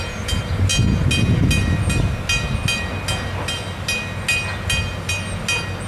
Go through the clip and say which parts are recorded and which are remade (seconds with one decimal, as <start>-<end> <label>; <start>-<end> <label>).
0.0-5.9 recorded